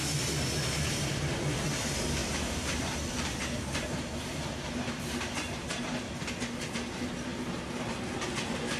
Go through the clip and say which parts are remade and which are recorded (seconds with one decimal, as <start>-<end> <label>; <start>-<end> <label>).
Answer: 0.0-2.2 recorded; 2.2-6.3 remade; 6.3-8.8 recorded